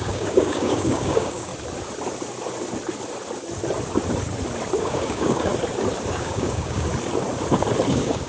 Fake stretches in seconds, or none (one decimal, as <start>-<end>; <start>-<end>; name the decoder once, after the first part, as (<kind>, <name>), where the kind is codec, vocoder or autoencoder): 0.0-1.5 (codec, DAC); 4.8-5.5; 6.1-6.9; 7.9-8.3